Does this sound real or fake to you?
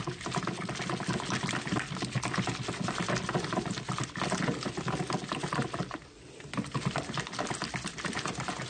real